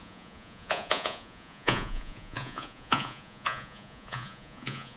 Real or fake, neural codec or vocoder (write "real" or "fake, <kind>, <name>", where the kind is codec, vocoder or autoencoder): fake, vocoder, Vocos